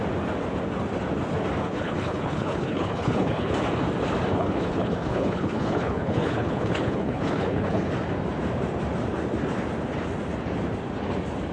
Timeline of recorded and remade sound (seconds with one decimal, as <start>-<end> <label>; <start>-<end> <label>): 0.0-1.6 recorded; 1.6-3.5 remade; 3.5-4.3 recorded; 4.3-7.9 remade; 7.9-11.5 recorded